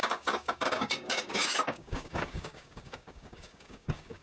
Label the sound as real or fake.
fake